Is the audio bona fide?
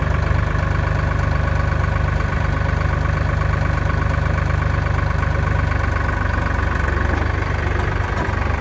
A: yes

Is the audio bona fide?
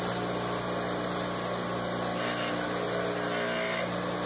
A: yes